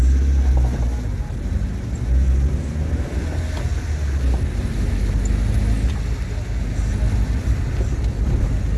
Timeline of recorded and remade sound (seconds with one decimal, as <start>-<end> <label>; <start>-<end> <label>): 0.0-8.8 recorded